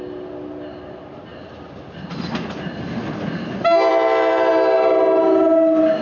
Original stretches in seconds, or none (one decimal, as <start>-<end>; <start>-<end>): 0.0-6.0